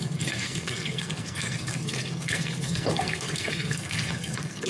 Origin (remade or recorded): remade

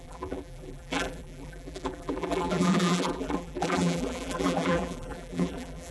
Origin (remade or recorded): remade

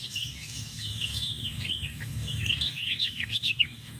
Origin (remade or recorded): remade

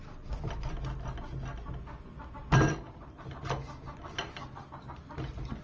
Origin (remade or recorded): recorded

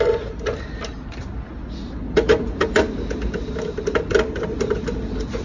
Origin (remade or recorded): recorded